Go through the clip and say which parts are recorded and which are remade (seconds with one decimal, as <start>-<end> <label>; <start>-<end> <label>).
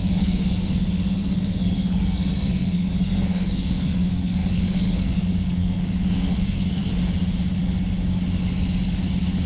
0.0-6.8 remade; 6.8-9.5 recorded